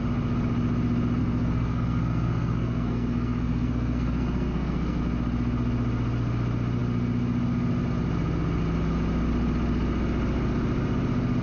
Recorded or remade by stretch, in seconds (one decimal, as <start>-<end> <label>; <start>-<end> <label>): 0.0-1.2 recorded; 1.2-5.0 remade; 5.0-11.4 recorded